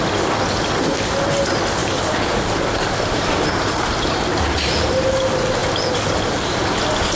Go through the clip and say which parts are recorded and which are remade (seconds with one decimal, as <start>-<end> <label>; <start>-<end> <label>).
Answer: 0.0-1.8 recorded; 1.8-5.1 remade; 5.1-7.2 recorded